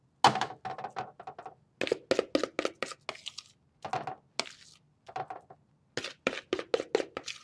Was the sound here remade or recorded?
recorded